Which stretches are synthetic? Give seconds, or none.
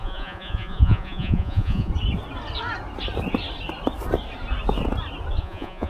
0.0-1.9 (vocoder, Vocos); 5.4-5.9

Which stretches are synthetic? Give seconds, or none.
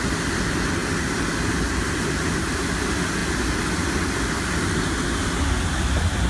none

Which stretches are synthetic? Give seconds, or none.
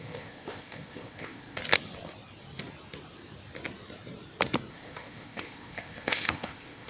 0.0-1.6 (codec, ZipCodec); 4.7-6.9